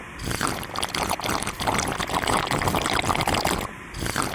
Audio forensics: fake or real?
real